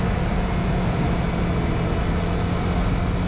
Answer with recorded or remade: recorded